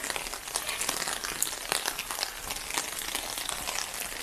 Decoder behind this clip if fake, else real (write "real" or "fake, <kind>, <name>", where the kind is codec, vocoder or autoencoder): real